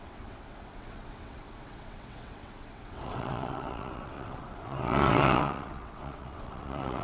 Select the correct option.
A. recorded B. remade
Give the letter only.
B